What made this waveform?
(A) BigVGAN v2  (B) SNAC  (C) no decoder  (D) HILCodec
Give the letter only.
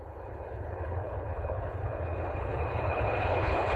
D